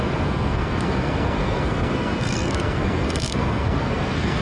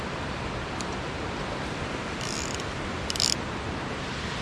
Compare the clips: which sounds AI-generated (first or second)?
first